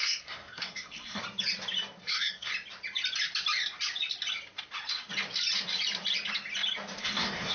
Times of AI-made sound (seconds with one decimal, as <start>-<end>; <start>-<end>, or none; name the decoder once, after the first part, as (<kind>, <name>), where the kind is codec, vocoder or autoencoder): 0.0-1.2 (codec, SNAC); 2.0-2.5; 7.0-7.5